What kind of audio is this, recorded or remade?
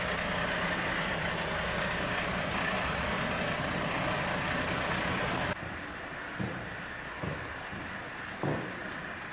recorded